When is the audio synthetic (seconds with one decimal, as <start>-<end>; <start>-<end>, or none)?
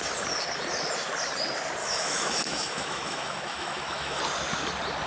1.8-4.2